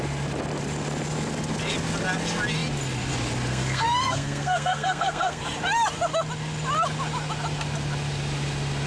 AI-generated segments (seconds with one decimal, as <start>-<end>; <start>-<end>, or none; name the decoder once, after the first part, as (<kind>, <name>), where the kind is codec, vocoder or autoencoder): 3.5-5.4 (codec, SNAC)